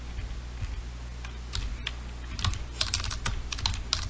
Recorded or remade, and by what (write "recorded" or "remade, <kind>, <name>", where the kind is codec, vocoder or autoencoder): recorded